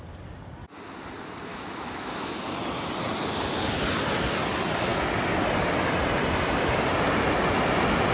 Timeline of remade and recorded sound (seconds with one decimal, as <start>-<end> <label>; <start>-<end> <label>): 0.0-1.5 recorded; 1.5-2.3 remade; 2.3-8.1 recorded